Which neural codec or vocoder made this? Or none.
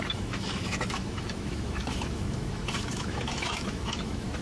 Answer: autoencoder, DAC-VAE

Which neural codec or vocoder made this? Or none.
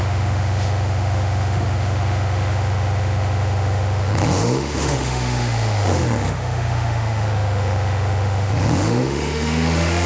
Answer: autoencoder, DAC-VAE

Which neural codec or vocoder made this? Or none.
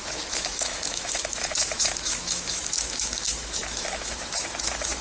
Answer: autoencoder, DAC-VAE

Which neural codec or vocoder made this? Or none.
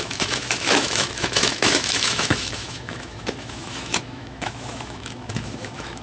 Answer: autoencoder, DAC-VAE